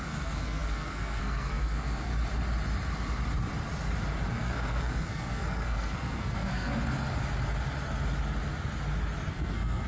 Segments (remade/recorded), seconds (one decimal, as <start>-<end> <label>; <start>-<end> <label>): 0.0-2.1 remade; 2.1-4.3 recorded; 4.3-6.7 remade; 6.7-9.3 recorded; 9.3-9.9 remade